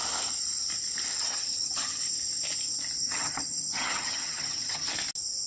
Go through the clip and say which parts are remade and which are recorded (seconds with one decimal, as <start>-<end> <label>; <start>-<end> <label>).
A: 0.0-1.1 recorded; 1.1-2.0 remade; 2.0-3.0 recorded; 3.0-4.9 remade; 4.9-5.5 recorded